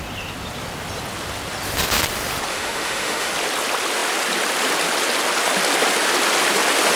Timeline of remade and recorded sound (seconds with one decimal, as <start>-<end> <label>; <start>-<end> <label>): 0.0-2.5 recorded; 2.5-3.3 remade; 3.3-7.0 recorded